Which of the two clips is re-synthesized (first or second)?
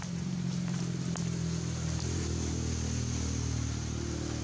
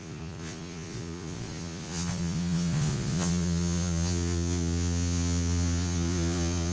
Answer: second